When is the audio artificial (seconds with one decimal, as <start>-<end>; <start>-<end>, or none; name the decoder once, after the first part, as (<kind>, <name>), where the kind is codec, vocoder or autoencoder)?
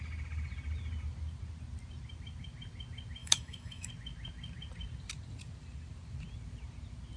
3.2-3.9 (autoencoder, DAC-VAE)